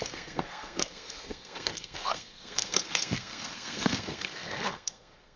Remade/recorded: remade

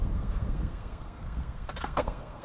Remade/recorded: remade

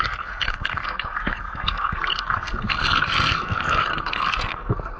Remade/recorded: remade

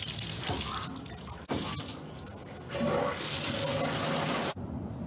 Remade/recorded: recorded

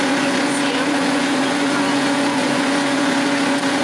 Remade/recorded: remade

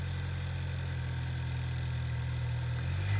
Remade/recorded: recorded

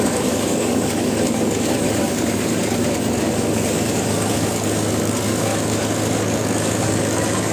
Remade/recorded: remade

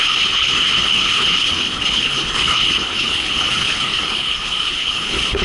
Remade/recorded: remade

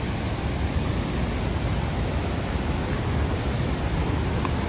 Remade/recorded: recorded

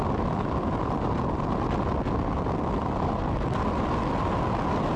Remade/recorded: recorded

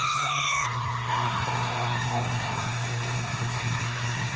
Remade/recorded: remade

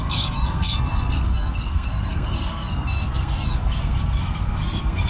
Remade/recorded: remade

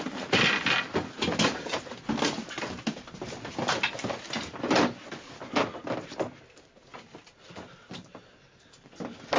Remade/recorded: recorded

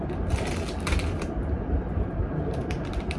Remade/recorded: recorded